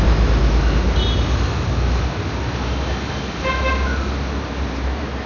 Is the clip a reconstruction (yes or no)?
no